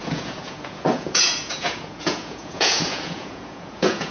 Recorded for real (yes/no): no